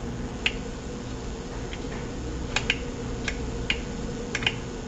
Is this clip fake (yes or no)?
no